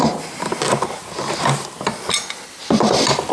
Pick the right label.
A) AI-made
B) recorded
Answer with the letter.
B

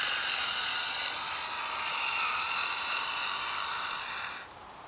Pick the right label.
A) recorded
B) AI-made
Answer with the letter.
A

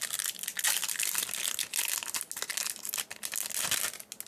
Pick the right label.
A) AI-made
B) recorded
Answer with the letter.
B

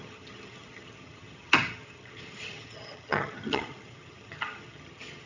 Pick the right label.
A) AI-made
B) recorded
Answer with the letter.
A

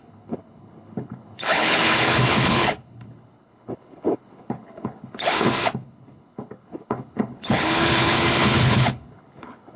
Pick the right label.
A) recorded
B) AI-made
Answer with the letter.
B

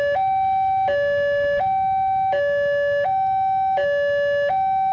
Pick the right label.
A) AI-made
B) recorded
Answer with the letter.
B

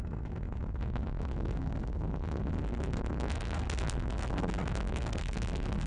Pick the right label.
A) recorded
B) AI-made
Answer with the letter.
B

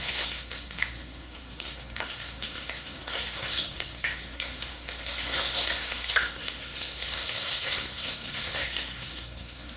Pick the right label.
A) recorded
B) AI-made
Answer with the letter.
B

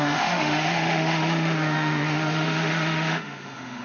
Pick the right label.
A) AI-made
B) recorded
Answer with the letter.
A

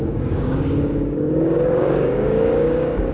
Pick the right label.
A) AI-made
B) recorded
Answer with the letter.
A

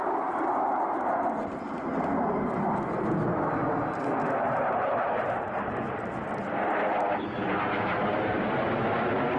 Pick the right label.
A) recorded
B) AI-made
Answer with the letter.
A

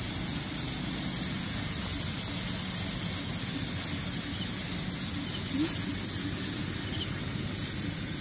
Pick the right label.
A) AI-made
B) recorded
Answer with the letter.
B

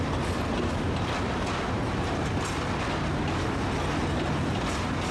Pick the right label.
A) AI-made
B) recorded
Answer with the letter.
B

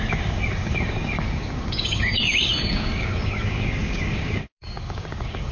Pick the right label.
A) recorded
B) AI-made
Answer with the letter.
B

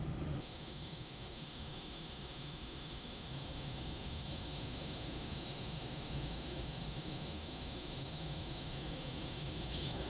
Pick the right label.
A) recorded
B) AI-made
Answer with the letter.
B